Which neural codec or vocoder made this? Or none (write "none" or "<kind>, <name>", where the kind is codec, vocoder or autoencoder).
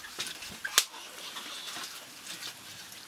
none